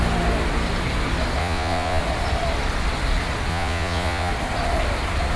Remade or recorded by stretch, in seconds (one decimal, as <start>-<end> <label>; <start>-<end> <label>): 0.0-1.4 recorded; 1.4-2.0 remade; 2.0-3.5 recorded; 3.5-4.3 remade; 4.3-5.4 recorded